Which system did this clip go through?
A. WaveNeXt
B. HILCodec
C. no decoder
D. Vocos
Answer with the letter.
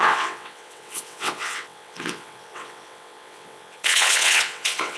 A